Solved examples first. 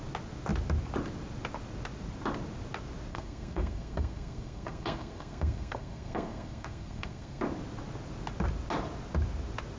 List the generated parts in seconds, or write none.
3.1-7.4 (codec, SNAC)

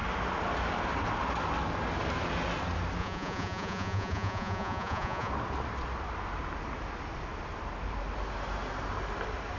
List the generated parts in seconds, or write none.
3.0-5.3 (vocoder, Vocos)

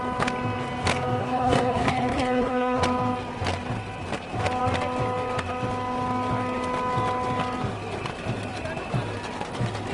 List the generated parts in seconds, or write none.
1.2-2.8 (codec, SNAC)

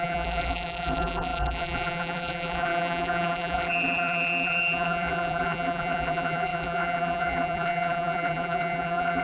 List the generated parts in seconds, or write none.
0.0-9.2 (vocoder, BigVGAN v2)

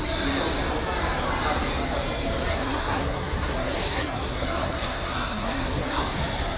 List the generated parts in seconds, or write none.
2.5-6.0 (codec, SNAC)

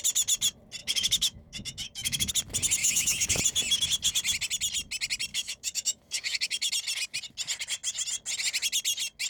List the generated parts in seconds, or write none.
0.8-2.3 (autoencoder, DAC-VAE); 2.8-3.4; 5.3-6.7